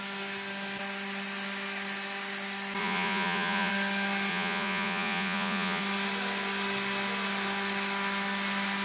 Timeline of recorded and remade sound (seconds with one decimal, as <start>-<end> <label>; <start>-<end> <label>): 0.0-2.8 recorded; 2.8-3.7 remade; 3.7-4.3 recorded; 4.3-5.8 remade; 5.8-8.8 recorded